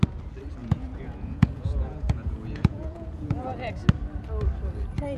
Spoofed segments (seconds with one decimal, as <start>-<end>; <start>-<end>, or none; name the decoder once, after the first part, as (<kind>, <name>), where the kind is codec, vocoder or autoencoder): 0.6-3.7 (vocoder, Vocos)